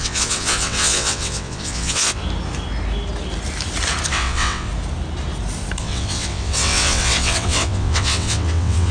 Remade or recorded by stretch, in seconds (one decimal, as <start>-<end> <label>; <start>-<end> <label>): 0.0-2.2 remade; 2.2-4.1 recorded; 4.1-4.7 remade; 4.7-5.8 recorded; 5.8-8.9 remade